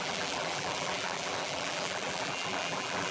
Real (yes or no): no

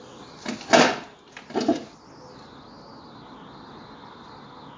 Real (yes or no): yes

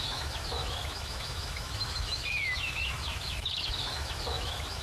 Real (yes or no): no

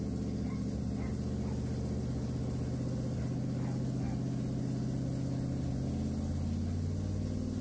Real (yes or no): yes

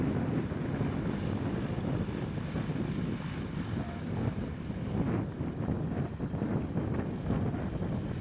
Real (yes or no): yes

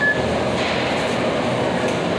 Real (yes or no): yes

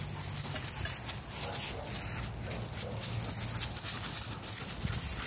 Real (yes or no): yes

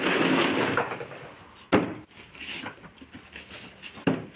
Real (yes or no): yes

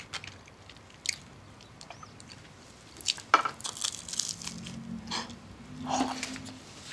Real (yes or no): yes